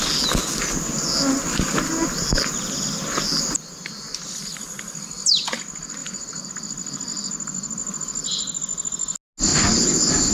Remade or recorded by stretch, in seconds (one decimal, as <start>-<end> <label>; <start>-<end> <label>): 0.0-6.0 recorded; 6.0-6.5 remade; 6.5-10.3 recorded